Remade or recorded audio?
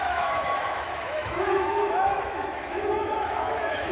remade